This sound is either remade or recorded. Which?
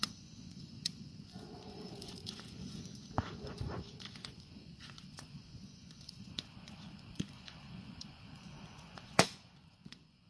remade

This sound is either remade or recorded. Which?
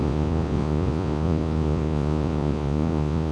remade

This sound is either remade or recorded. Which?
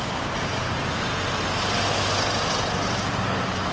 recorded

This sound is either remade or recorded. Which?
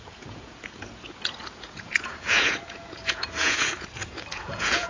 remade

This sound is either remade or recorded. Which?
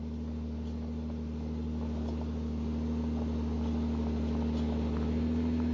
recorded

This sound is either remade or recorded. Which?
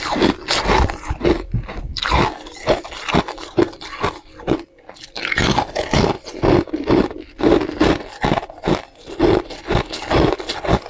recorded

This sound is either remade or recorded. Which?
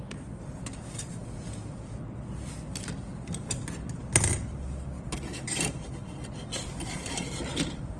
recorded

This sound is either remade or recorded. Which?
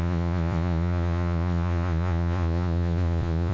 remade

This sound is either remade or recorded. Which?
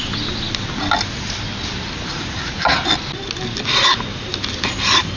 recorded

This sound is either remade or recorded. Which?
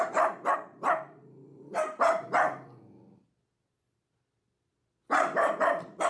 recorded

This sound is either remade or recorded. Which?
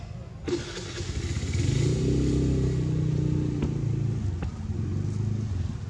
recorded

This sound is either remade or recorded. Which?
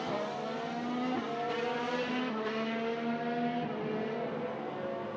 recorded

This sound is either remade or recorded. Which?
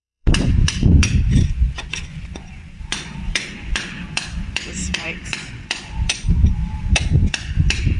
remade